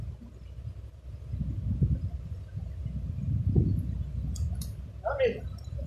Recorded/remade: recorded